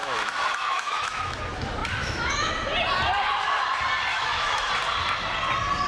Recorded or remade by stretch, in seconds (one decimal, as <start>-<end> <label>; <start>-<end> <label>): 0.0-1.4 remade; 1.4-2.0 recorded; 2.0-2.5 remade; 2.5-4.1 recorded; 4.1-4.7 remade; 4.7-5.9 recorded